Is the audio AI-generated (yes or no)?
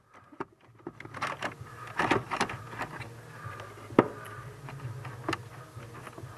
no